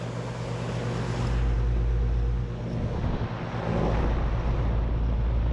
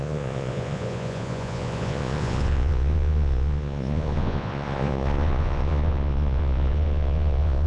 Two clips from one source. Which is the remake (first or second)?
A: second